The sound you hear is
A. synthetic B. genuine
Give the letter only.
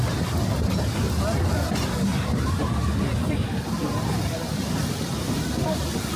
B